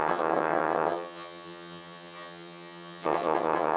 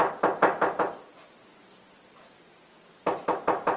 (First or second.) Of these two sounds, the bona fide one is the second